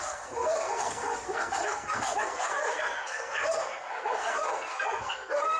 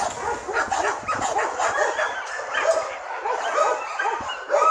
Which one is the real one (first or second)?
second